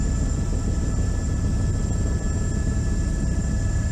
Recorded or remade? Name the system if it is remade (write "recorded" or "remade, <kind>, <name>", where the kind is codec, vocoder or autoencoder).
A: remade, vocoder, BigVGAN v2